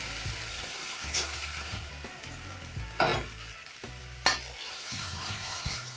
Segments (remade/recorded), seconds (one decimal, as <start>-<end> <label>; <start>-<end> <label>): 0.0-0.5 recorded; 0.5-1.9 remade; 1.9-4.7 recorded; 4.7-6.0 remade

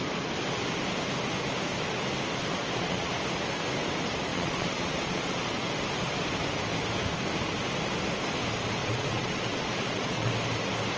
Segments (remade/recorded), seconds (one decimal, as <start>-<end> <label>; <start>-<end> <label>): 0.0-2.5 recorded; 2.5-3.1 remade; 3.1-4.3 recorded; 4.3-5.7 remade; 5.7-8.8 recorded; 8.8-10.3 remade; 10.3-11.0 recorded

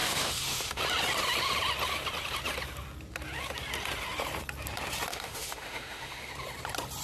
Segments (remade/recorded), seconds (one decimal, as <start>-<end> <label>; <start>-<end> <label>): 0.0-0.8 remade; 0.8-5.1 recorded; 5.1-6.3 remade; 6.3-7.0 recorded